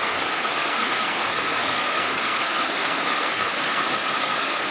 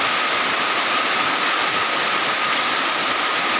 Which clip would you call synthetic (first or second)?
first